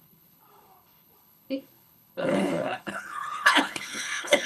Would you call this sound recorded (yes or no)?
no